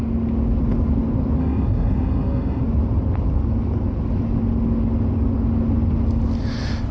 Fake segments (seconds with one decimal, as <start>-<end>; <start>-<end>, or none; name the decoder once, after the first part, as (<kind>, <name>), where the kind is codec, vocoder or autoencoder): 1.4-2.6 (autoencoder, DAC-VAE)